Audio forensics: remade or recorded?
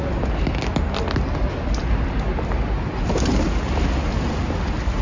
recorded